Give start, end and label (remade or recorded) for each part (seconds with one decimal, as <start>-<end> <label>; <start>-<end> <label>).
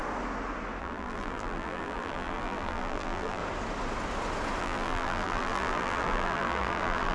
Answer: 0.0-0.8 recorded; 0.8-3.4 remade; 3.4-4.6 recorded; 4.6-7.1 remade